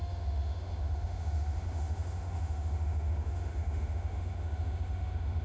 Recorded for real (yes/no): no